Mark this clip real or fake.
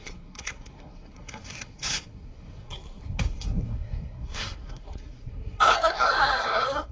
fake